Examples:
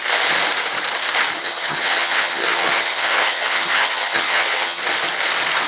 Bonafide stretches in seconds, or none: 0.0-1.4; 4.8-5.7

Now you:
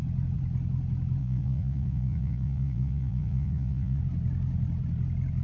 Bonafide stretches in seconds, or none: 0.0-1.2; 4.0-5.4

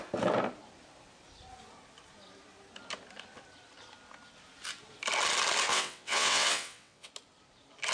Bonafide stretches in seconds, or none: 0.0-5.7; 7.1-7.9

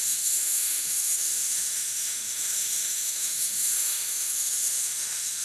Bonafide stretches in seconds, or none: none

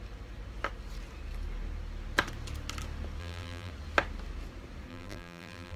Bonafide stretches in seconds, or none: 0.0-3.2; 3.7-4.9

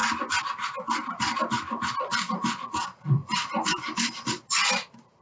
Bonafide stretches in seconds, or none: 0.0-5.2